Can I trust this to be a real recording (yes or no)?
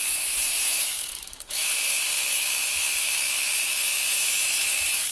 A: no